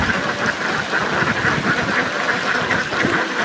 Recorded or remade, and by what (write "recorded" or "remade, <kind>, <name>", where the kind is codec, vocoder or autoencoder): recorded